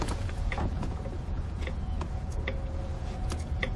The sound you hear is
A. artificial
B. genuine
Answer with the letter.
A